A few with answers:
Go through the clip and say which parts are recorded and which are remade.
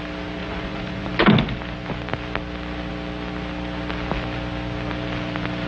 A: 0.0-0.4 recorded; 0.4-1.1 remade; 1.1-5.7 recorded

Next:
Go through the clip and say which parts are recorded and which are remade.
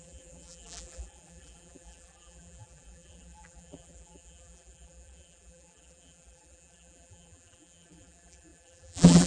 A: 0.0-9.3 remade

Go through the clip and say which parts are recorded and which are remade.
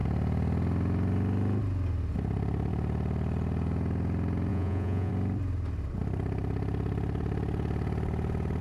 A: 0.0-4.5 recorded; 4.5-5.1 remade; 5.1-8.6 recorded